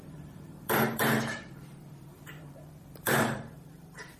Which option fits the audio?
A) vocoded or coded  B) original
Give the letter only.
A